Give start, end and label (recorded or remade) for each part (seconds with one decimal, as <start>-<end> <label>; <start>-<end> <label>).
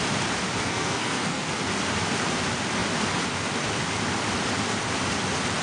0.0-0.6 recorded; 0.6-1.5 remade; 1.5-5.6 recorded